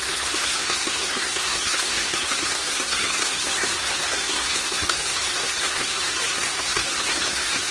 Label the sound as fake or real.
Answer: fake